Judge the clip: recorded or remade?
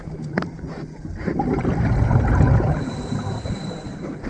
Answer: recorded